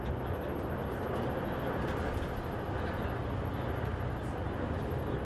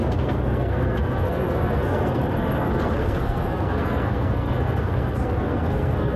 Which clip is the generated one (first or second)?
second